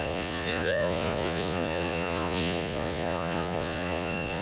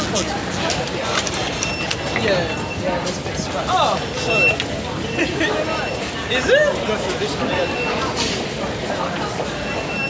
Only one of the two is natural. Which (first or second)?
second